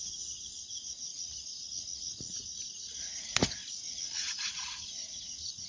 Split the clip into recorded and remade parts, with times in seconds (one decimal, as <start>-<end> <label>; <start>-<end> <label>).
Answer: 0.0-1.1 remade; 1.1-2.3 recorded; 2.3-3.6 remade; 3.6-4.3 recorded; 4.3-5.7 remade